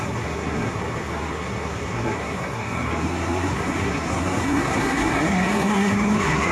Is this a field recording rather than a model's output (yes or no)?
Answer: no